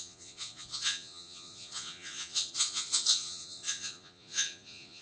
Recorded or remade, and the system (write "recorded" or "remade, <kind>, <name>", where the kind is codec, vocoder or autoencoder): remade, vocoder, Vocos